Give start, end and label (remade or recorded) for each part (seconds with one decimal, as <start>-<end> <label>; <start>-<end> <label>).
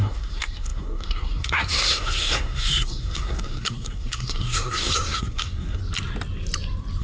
0.0-5.8 remade; 5.8-7.0 recorded